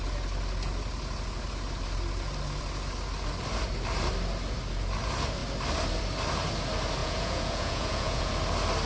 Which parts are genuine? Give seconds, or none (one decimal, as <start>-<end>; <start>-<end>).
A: 0.0-7.0; 8.3-8.9